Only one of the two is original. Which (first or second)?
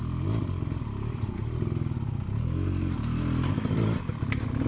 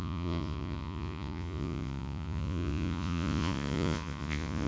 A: first